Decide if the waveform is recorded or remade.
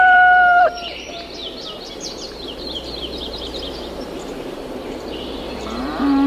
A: remade